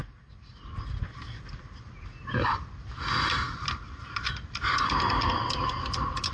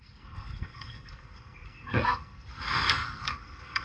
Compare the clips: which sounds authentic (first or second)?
first